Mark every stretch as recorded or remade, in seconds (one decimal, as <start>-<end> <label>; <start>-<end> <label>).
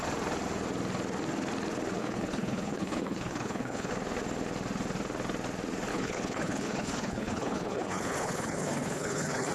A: 0.0-2.0 recorded; 2.0-3.9 remade; 3.9-5.9 recorded; 5.9-9.5 remade